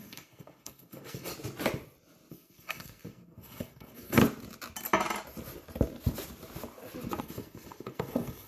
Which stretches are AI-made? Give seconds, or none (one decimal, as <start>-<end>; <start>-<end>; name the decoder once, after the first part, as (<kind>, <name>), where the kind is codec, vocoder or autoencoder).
0.0-1.3 (codec, SNAC); 2.3-4.2; 7.2-8.5